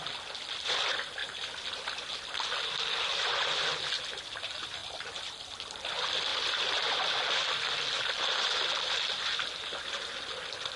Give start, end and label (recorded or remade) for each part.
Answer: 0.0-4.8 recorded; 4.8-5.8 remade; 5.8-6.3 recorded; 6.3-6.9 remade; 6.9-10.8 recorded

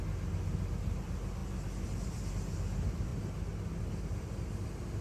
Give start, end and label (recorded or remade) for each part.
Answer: 0.0-5.0 recorded

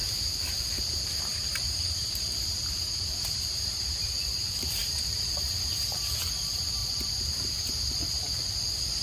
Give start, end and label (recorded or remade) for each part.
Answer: 0.0-0.6 recorded; 0.6-9.0 remade

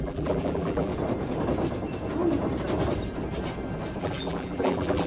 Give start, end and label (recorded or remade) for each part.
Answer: 0.0-0.9 remade; 0.9-4.0 recorded; 4.0-5.1 remade

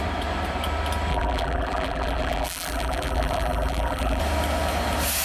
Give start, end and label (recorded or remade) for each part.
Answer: 0.0-1.1 recorded; 1.1-4.2 remade; 4.2-5.2 recorded

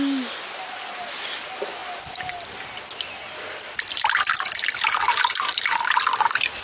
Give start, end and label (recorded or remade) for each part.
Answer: 0.0-6.6 recorded

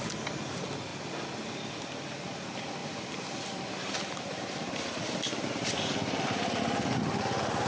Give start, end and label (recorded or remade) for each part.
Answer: 0.0-2.8 recorded; 2.8-6.6 remade; 6.6-7.7 recorded

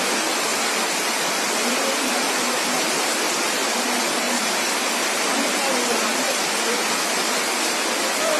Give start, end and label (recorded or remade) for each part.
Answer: 0.0-8.4 recorded